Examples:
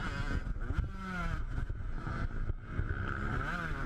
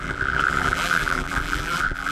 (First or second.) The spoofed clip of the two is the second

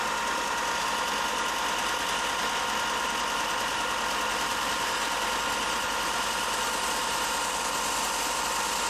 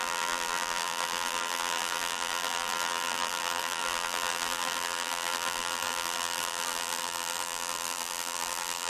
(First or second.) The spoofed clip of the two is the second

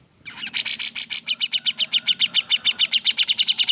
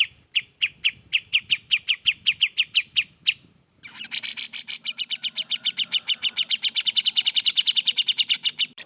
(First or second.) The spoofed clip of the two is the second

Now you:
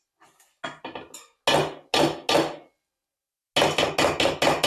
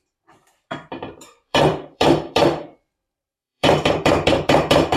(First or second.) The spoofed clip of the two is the second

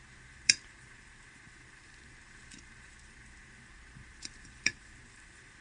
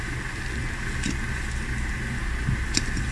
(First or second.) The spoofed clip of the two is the first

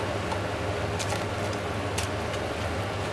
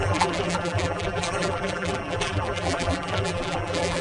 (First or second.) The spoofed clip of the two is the second